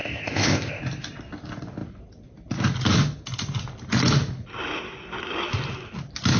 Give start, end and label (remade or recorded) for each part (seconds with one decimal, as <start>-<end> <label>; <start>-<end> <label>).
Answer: 0.0-0.8 remade; 0.8-6.4 recorded